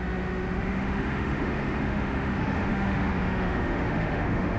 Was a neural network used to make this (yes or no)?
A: yes